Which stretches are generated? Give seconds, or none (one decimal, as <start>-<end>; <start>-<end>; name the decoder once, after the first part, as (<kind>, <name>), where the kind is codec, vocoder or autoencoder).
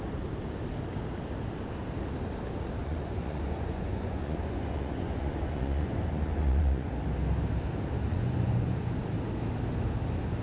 2.8-6.9 (vocoder, Vocos); 8.1-9.0